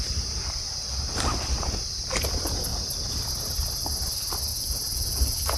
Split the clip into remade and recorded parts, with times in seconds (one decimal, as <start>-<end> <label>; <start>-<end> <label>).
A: 0.0-4.5 recorded; 4.5-5.6 remade